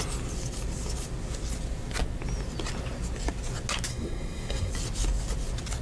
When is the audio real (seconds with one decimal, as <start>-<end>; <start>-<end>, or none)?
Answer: 0.0-3.9; 4.7-5.8

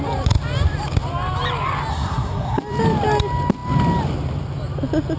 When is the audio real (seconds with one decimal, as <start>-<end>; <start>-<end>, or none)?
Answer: 0.0-1.9; 2.6-5.2

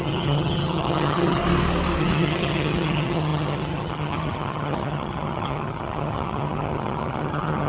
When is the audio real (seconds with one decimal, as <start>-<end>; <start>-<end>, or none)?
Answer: 1.4-2.0

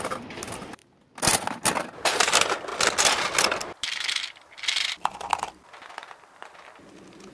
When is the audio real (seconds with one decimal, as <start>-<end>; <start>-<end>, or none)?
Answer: 0.8-1.6; 2.7-7.3

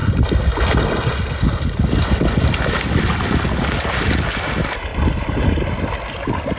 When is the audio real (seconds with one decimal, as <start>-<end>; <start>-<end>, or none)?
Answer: 0.0-4.9

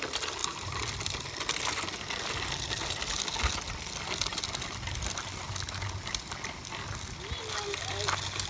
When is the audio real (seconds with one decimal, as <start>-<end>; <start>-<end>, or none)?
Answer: 0.0-0.4; 0.9-8.5

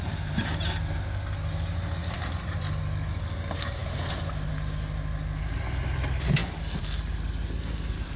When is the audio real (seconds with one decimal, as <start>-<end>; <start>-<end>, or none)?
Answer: 0.0-2.0; 2.8-6.4